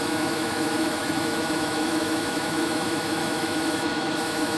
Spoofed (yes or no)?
yes